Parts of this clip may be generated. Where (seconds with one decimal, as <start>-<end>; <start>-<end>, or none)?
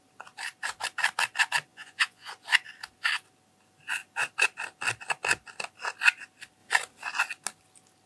1.7-2.3